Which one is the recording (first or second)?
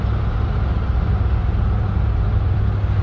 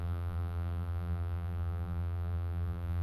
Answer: first